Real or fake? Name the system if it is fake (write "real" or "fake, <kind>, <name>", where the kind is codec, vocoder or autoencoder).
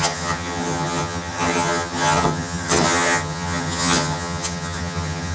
fake, vocoder, HiFi-GAN